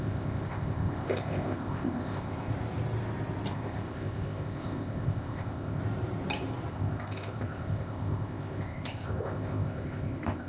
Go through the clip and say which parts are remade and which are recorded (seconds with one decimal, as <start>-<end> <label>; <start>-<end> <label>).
0.0-2.5 remade; 2.5-3.5 recorded; 3.5-5.8 remade; 5.8-6.7 recorded; 6.7-10.5 remade

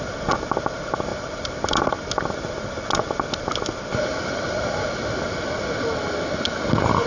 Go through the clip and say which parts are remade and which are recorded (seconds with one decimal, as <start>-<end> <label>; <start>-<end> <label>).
0.0-7.1 recorded

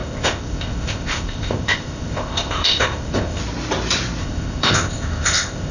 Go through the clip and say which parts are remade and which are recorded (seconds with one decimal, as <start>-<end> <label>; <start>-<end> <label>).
0.0-3.4 remade; 3.4-4.2 recorded; 4.2-5.7 remade